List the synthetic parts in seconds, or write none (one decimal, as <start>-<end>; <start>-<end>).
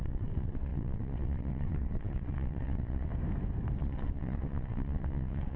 0.0-3.1; 3.8-5.6